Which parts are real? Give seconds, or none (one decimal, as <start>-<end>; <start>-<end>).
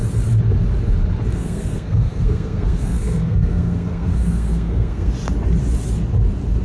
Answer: 0.0-1.3; 5.1-6.6